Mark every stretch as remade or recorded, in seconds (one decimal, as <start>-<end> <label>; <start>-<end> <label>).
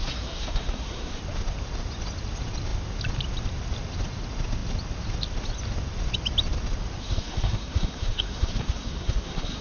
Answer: 0.0-1.2 remade; 1.2-7.0 recorded; 7.0-9.6 remade